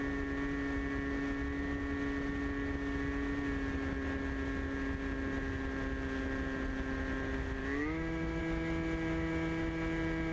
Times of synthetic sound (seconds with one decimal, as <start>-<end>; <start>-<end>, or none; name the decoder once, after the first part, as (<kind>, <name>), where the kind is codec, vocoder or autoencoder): 7.6-8.4 (autoencoder, DAC-VAE)